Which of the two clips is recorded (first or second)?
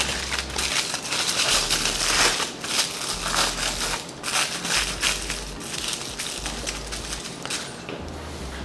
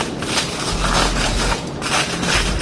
first